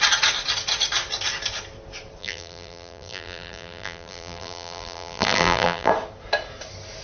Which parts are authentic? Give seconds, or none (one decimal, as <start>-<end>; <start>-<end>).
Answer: 0.0-2.2; 5.9-7.0